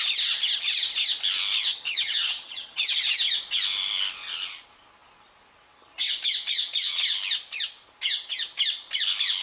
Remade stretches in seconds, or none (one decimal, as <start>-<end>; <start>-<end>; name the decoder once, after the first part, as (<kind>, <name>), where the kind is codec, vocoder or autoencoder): 1.7-2.8 (vocoder, HiFi-GAN)